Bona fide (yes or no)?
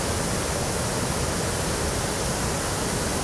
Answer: yes